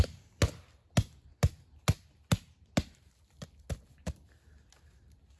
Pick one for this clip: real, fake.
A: real